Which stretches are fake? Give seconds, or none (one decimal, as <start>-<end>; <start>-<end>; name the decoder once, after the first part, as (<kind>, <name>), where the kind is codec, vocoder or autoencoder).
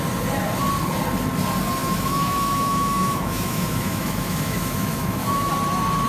1.8-5.5 (autoencoder, DAC-VAE)